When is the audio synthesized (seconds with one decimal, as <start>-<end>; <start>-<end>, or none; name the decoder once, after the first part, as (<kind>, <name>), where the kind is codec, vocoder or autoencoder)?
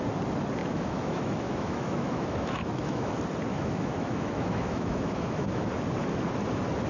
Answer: 0.6-3.1 (autoencoder, DAC-VAE); 3.5-5.7